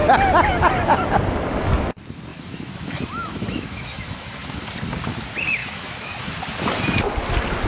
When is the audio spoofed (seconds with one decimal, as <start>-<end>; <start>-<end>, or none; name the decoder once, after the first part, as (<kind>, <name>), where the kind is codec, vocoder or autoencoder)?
2.3-4.6 (autoencoder, DAC-VAE); 5.6-6.3